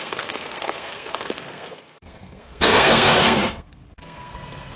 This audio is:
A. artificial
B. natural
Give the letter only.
A